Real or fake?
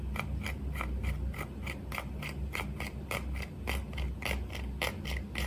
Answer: real